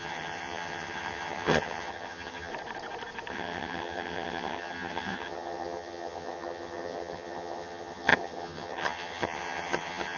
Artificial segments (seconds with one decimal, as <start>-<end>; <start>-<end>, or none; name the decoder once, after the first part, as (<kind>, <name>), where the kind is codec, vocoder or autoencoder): 0.0-2.5 (vocoder, HiFi-GAN); 3.3-10.2